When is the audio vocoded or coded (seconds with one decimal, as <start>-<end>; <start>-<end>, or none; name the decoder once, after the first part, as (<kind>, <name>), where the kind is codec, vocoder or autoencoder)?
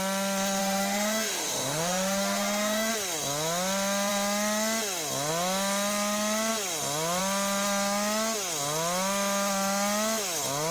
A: 0.6-2.9 (autoencoder, DAC-VAE)